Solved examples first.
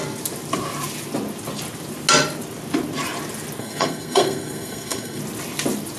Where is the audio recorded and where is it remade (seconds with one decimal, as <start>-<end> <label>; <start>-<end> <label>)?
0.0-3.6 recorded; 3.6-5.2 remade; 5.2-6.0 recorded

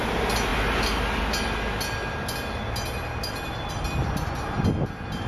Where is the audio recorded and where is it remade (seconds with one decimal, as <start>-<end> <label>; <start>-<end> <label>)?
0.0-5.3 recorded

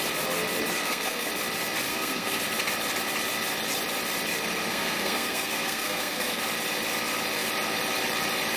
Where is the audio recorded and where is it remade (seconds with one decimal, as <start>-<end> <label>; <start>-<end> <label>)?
0.0-0.8 recorded; 0.8-1.3 remade; 1.3-1.9 recorded; 1.9-2.4 remade; 2.4-4.7 recorded; 4.7-6.4 remade; 6.4-8.6 recorded